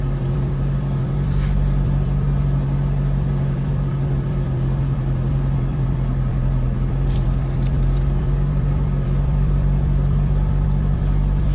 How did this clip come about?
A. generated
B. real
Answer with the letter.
A